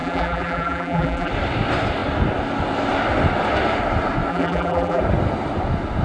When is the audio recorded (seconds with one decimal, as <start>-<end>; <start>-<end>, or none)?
1.3-4.3; 5.0-6.0